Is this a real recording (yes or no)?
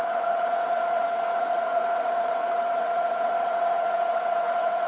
no